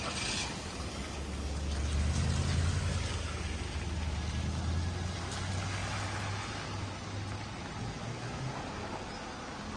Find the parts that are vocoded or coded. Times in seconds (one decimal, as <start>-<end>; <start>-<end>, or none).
none